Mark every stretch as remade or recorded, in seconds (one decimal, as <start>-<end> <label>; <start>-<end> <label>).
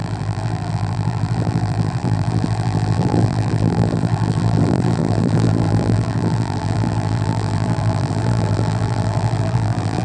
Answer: 0.0-10.0 remade